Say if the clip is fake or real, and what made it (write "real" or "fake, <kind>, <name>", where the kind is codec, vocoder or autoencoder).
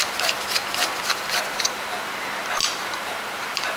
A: real